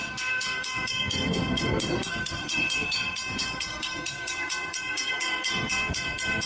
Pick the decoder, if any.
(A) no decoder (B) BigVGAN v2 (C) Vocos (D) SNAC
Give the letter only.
D